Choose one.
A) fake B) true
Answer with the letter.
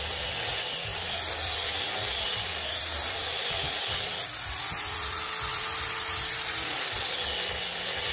B